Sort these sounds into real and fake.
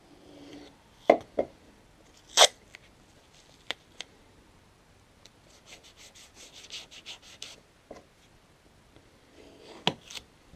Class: real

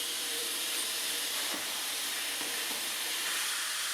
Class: fake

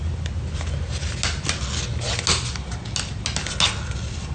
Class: real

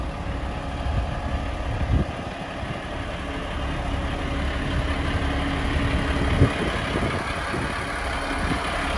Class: real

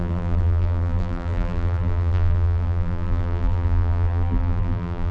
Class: fake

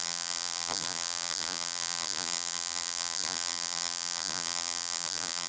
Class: fake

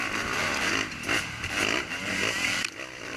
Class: real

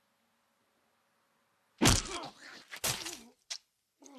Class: real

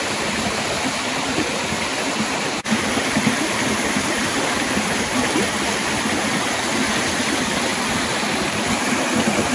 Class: real